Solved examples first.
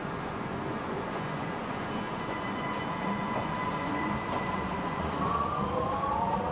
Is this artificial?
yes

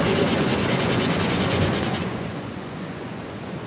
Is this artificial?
yes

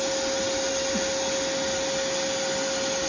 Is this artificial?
no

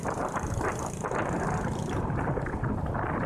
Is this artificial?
yes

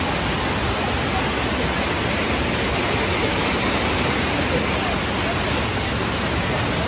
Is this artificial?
no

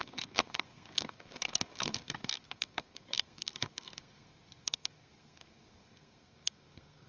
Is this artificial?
yes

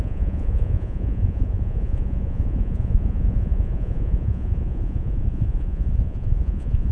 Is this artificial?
yes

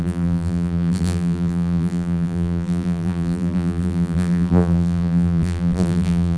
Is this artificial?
yes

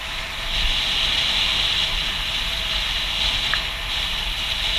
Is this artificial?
no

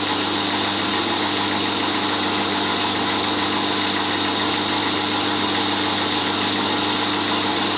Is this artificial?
no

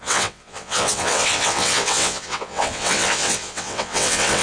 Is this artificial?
yes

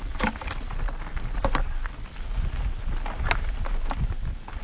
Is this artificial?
no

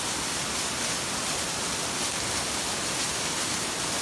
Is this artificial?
no